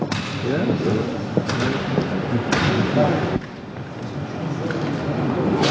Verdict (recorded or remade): recorded